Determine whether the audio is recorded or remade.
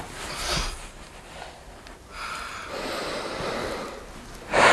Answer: recorded